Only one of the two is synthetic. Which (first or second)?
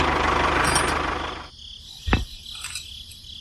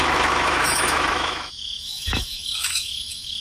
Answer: second